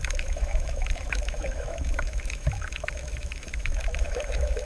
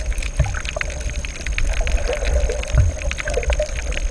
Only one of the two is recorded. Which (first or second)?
second